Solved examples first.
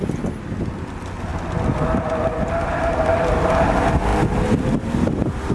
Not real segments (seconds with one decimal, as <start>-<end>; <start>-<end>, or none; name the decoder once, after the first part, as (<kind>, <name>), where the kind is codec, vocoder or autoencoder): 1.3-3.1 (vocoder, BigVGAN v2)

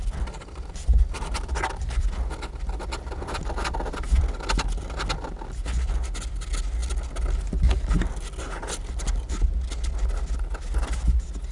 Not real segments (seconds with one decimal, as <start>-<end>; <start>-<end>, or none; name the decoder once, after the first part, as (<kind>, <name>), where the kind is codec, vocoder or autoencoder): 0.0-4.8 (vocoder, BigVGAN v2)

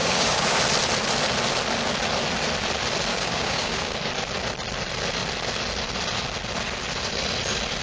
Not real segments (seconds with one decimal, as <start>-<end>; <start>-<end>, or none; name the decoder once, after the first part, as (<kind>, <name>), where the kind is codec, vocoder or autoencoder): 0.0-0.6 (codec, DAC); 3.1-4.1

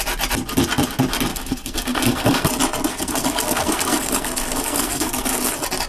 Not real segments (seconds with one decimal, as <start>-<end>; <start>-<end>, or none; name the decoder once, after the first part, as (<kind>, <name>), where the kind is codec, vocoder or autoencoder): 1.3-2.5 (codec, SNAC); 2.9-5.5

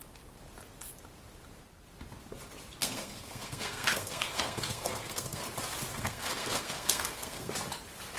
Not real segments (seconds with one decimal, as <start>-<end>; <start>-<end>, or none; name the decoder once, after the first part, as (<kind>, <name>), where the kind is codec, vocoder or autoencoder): 2.8-5.4 (codec, SNAC); 5.9-7.5

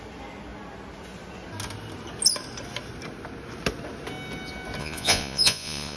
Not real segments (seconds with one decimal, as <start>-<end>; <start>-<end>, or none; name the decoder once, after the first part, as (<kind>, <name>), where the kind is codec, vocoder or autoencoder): 4.8-6.0 (vocoder, Vocos)

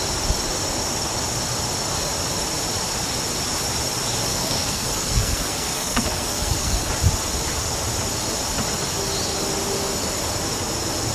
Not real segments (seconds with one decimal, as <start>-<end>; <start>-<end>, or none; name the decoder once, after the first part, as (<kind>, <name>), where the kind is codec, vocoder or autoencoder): 4.3-6.9 (codec, SNAC)